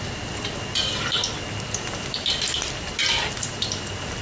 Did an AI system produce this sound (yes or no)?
no